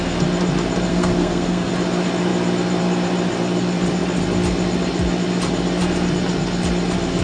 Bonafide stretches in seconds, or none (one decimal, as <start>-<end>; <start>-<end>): 0.0-0.9; 1.7-7.2